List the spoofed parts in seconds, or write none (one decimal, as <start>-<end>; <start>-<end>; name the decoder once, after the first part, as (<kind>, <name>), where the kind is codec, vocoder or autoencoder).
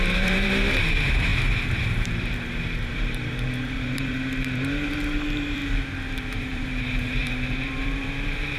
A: 0.0-5.6 (vocoder, BigVGAN v2); 6.2-8.6